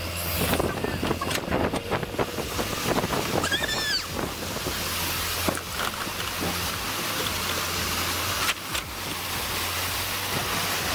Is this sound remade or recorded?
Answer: recorded